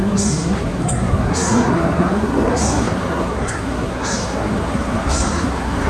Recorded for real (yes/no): no